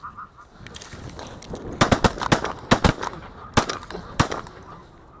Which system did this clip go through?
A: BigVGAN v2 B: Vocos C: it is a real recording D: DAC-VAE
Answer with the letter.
C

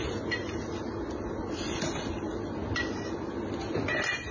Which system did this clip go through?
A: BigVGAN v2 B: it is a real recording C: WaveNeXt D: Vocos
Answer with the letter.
B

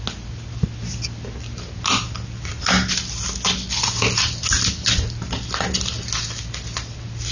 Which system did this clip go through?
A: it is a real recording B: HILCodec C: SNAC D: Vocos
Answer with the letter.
A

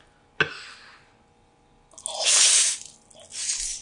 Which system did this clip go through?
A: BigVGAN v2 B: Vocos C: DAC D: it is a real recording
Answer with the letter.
D